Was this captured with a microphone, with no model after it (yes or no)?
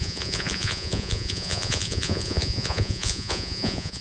no